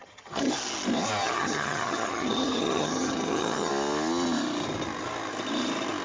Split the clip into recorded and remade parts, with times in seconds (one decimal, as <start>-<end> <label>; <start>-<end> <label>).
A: 0.0-0.5 remade; 0.5-1.2 recorded; 1.2-3.7 remade; 3.7-6.0 recorded